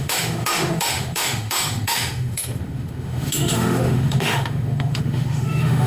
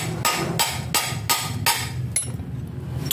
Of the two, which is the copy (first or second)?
first